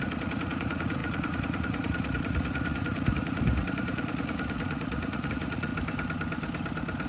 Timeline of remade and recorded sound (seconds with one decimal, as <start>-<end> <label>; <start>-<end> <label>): 0.0-5.7 remade; 5.7-7.1 recorded